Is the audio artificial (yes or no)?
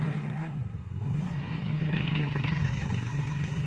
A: yes